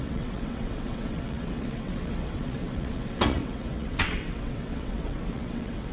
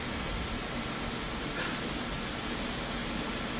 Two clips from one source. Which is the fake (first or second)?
first